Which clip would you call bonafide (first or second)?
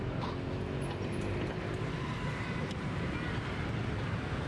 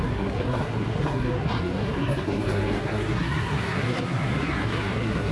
first